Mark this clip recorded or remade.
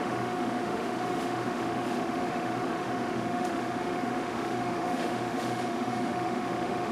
remade